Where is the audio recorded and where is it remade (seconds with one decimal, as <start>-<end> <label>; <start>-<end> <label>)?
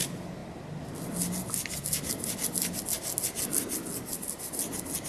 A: 0.0-5.1 recorded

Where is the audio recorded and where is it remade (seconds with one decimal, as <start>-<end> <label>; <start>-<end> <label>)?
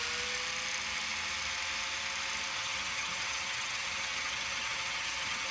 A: 0.0-2.5 recorded; 2.5-5.5 remade